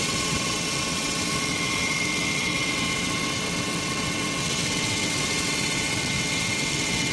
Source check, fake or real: fake